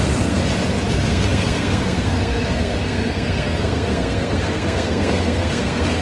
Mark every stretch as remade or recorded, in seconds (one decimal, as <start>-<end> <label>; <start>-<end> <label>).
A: 0.0-0.4 remade; 0.4-0.9 recorded; 0.9-6.0 remade